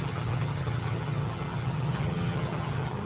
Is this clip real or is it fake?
fake